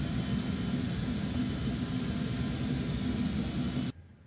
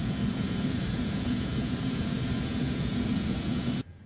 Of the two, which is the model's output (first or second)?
second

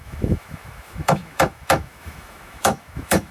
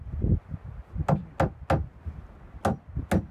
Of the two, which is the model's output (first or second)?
first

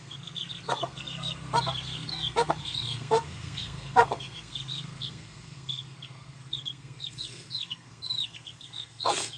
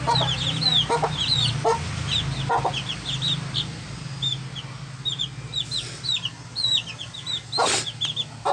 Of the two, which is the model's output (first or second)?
first